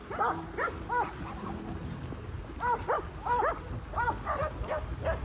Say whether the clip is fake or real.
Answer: real